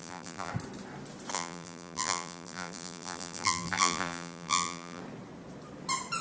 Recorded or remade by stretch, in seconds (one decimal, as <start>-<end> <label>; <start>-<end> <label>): 0.0-0.5 remade; 0.5-1.3 recorded; 1.3-5.0 remade; 5.0-6.2 recorded

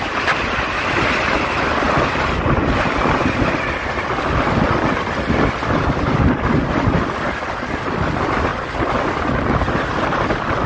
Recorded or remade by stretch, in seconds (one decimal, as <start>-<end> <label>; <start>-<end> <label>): 0.0-10.7 recorded

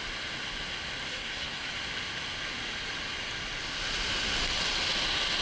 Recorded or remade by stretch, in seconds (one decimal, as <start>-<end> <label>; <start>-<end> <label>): 0.0-1.1 recorded; 1.1-1.7 remade; 1.7-5.4 recorded

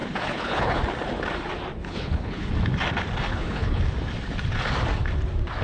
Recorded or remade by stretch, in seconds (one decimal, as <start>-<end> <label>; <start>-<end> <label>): 0.0-0.8 remade; 0.8-1.8 recorded; 1.8-2.5 remade; 2.5-3.3 recorded; 3.3-3.8 remade; 3.8-5.6 recorded

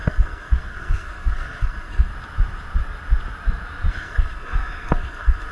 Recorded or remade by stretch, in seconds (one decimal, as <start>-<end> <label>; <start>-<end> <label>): 0.0-2.1 remade; 2.1-3.9 recorded; 3.9-5.5 remade

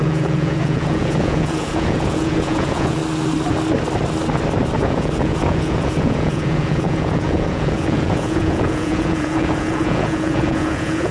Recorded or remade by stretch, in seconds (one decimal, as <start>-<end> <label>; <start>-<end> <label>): 0.0-3.0 remade; 3.0-4.8 recorded; 4.8-11.1 remade